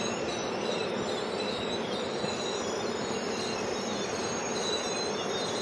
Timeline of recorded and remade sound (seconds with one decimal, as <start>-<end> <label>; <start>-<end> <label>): 0.0-5.6 recorded